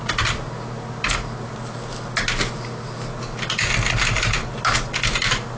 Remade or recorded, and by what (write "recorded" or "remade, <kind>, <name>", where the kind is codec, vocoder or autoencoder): recorded